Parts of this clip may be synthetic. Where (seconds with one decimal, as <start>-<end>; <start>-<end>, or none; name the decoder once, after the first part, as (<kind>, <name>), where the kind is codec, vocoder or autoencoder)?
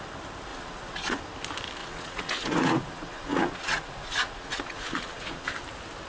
0.5-1.2 (vocoder, Vocos); 1.8-5.5